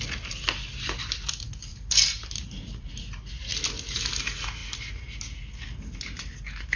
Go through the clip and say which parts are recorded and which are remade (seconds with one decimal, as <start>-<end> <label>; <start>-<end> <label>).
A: 0.0-1.7 recorded; 1.7-2.9 remade; 2.9-6.8 recorded